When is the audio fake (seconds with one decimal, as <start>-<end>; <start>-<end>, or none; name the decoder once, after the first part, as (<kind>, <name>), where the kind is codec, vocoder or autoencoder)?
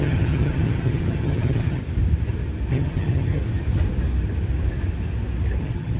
0.0-1.8 (vocoder, HiFi-GAN); 2.7-3.4; 5.6-6.0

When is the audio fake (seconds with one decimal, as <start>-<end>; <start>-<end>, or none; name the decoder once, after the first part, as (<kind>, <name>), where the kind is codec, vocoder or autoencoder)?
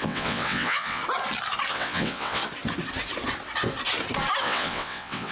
0.0-1.0 (vocoder, WaveNeXt); 1.7-2.4; 4.4-5.3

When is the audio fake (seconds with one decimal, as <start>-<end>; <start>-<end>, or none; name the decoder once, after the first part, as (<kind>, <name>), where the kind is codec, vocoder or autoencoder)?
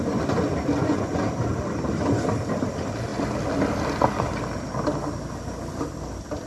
0.8-1.3 (vocoder, Vocos)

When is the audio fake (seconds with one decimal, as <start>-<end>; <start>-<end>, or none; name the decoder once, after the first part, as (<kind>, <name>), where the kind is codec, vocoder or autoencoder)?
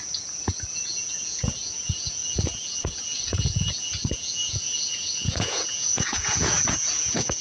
0.0-7.4 (vocoder, Vocos)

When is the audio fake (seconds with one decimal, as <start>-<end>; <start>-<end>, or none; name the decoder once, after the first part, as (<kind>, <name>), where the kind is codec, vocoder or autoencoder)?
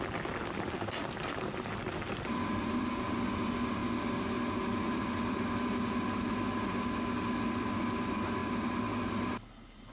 none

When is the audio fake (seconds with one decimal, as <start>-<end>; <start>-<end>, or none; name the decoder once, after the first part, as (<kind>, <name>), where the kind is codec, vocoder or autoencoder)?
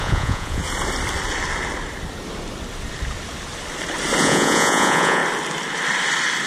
0.0-0.6 (vocoder, Vocos); 4.2-5.2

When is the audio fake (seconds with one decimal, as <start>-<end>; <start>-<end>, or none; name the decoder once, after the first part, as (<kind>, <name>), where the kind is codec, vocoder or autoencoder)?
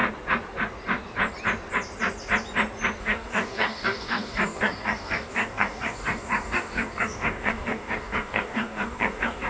3.0-9.5 (codec, DAC)